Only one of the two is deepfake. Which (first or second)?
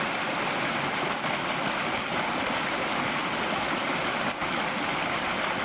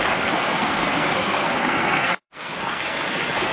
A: second